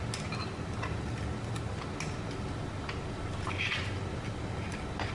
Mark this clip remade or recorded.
recorded